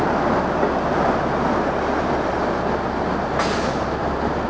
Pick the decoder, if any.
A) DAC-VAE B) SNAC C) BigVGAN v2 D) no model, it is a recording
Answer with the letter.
D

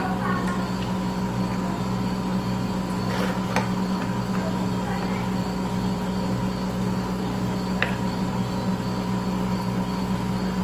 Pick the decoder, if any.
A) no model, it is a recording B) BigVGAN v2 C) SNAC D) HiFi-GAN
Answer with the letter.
A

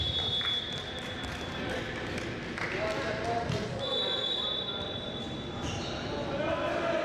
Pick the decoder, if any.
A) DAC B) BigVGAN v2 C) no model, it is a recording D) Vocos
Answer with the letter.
C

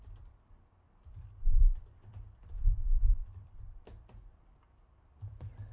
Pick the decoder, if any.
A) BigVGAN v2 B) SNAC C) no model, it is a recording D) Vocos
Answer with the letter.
A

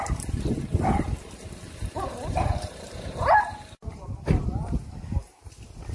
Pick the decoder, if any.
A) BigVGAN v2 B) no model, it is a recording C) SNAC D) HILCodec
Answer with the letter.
A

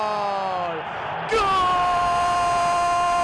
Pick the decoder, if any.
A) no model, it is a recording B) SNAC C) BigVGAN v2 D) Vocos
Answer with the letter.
A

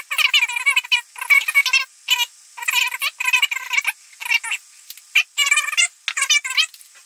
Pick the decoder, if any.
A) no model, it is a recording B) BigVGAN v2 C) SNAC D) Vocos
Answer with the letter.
A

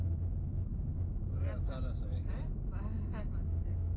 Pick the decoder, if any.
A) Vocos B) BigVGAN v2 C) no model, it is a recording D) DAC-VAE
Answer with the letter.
C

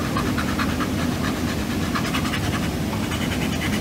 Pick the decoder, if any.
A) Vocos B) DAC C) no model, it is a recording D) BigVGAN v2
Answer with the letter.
C